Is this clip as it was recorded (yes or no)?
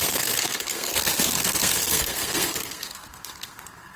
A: no